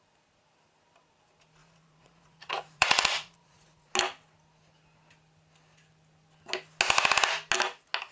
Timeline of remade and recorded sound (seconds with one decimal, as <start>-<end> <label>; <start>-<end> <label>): 0.0-1.6 recorded; 1.6-3.9 remade; 3.9-8.1 recorded